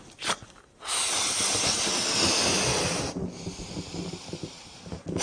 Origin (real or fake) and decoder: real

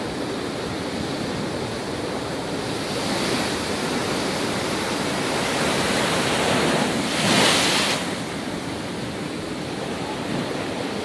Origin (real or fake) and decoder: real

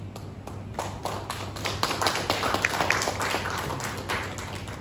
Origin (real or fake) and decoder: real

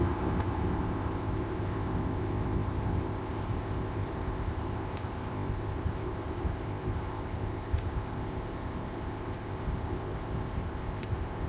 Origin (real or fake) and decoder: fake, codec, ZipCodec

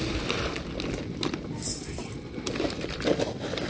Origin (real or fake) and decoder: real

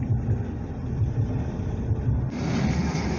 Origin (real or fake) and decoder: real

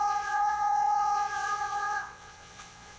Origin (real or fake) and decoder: fake, vocoder, WaveNeXt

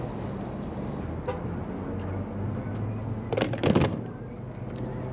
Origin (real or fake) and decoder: real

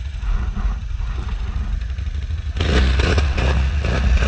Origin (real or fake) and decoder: fake, vocoder, Vocos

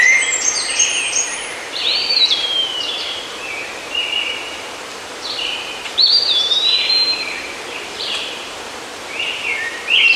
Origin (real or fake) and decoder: fake, vocoder, BigVGAN v2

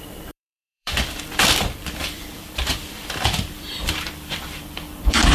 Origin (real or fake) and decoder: fake, vocoder, BigVGAN v2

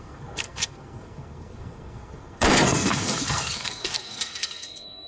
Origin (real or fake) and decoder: fake, codec, SNAC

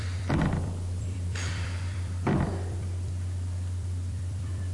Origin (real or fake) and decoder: fake, vocoder, BigVGAN v2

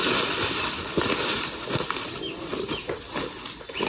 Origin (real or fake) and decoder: real